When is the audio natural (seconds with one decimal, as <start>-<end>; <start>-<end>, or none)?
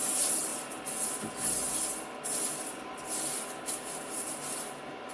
0.5-3.6